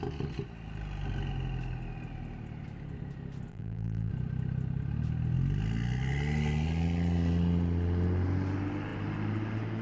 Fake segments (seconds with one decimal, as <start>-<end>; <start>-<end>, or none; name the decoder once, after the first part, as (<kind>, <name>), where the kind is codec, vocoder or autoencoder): 3.5-4.1 (vocoder, BigVGAN v2)